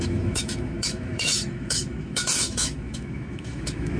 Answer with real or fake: fake